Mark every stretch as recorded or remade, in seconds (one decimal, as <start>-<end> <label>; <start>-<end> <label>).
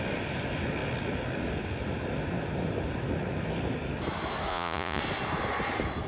0.0-4.5 recorded; 4.5-5.0 remade; 5.0-6.1 recorded